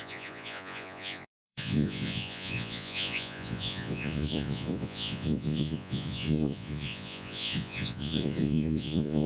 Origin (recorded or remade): remade